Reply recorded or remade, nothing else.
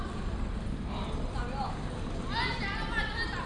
recorded